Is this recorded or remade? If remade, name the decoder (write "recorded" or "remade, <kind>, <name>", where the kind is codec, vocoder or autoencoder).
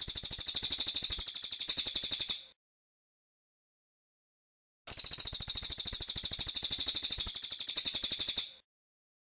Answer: recorded